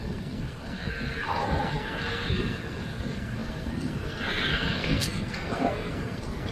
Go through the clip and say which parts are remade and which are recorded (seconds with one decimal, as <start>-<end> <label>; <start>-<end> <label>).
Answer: 0.0-6.5 remade

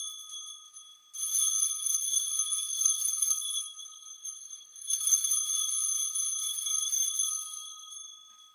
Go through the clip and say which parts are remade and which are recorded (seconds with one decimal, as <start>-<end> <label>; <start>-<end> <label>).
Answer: 0.0-1.6 recorded; 1.6-5.3 remade; 5.3-6.4 recorded; 6.4-7.9 remade; 7.9-8.5 recorded

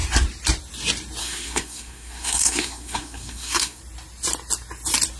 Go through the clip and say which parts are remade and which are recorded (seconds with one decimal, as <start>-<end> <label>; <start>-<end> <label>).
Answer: 0.0-1.2 recorded; 1.2-3.8 remade; 3.8-5.2 recorded

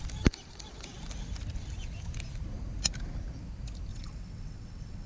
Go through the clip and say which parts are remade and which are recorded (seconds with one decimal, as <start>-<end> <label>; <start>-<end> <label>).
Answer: 0.0-3.9 recorded; 3.9-5.1 remade

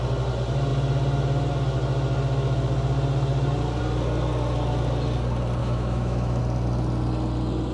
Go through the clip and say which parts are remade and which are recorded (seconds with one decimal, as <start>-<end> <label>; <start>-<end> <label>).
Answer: 0.0-5.6 recorded; 5.6-6.4 remade; 6.4-7.7 recorded

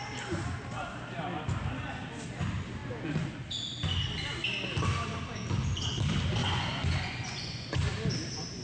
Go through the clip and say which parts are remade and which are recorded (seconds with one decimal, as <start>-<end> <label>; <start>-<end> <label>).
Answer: 0.0-6.4 recorded; 6.4-7.8 remade; 7.8-8.6 recorded